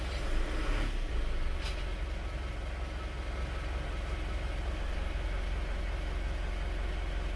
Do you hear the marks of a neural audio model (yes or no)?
no